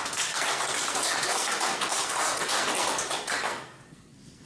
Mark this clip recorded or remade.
remade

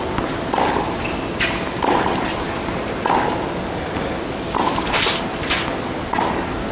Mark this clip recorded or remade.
recorded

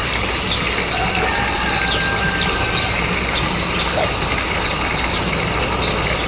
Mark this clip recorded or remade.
recorded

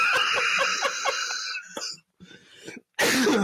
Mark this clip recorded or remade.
recorded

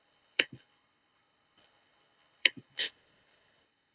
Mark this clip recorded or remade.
remade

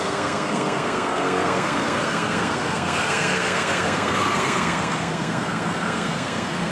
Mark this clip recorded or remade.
remade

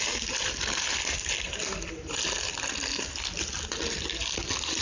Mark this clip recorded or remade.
recorded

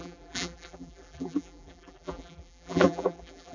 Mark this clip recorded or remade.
remade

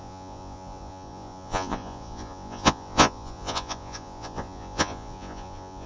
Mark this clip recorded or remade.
remade